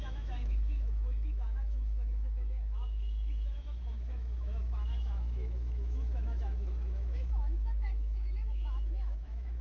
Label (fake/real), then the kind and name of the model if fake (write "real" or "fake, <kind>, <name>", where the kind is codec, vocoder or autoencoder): fake, autoencoder, DAC-VAE